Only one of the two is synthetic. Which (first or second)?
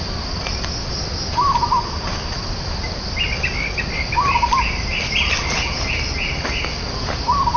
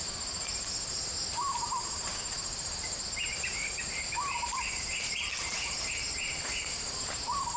second